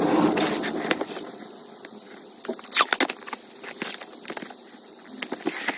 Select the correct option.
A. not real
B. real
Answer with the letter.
B